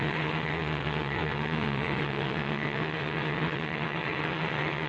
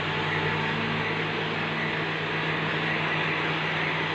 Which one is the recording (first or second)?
second